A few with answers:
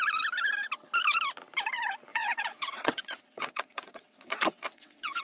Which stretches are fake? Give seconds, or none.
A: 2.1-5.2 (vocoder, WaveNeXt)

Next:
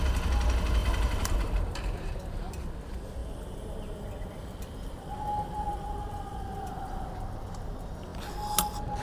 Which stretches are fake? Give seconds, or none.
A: 0.8-2.4 (vocoder, BigVGAN v2); 3.2-7.1

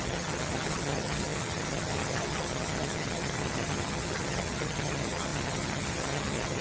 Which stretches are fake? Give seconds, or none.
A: 0.0-6.6 (vocoder, HiFi-GAN)

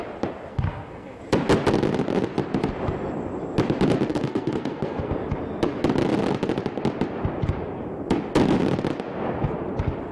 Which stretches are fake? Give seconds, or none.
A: 0.5-1.2 (codec, SNAC); 4.1-5.1

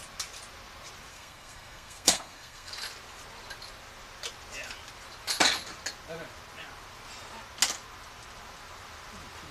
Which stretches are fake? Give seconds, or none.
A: 1.1-2.7 (codec, SNAC)

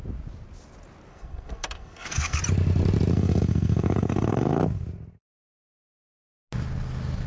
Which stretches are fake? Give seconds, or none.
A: 1.1-2.4 (codec, SNAC); 3.1-4.6

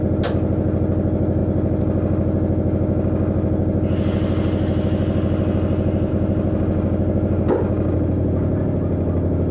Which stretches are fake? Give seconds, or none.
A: none

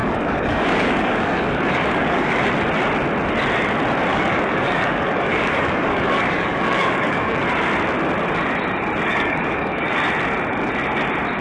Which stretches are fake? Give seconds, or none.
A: 0.0-2.5 (codec, DAC); 4.1-7.4; 9.1-9.9